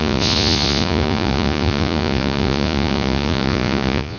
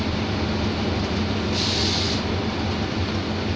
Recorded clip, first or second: second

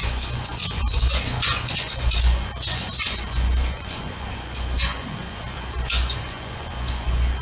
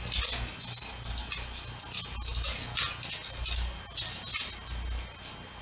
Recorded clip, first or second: second